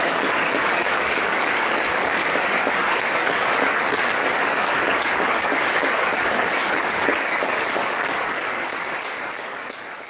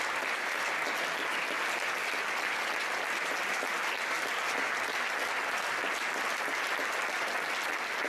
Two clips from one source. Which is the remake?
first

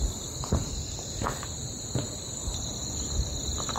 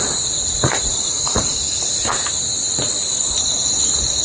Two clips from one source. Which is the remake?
second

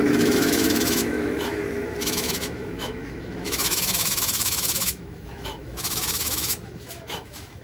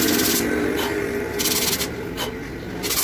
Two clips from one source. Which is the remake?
first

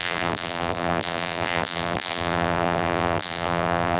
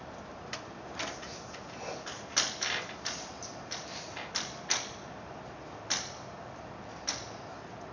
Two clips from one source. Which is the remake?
first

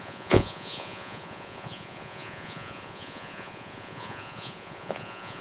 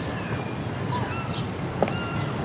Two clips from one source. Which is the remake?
first